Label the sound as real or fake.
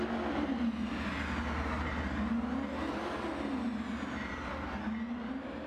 real